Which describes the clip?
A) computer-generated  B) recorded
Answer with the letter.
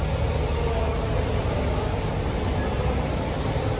B